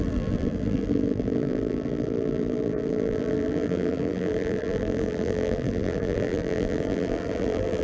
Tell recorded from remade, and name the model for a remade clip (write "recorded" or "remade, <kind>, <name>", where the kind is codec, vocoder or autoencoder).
remade, vocoder, BigVGAN v2